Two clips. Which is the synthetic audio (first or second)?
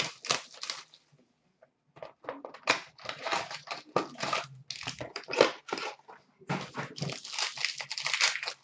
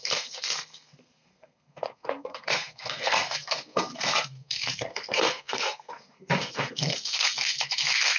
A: second